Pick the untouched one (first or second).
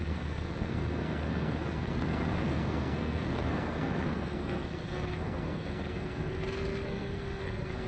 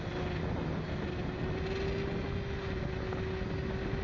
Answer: second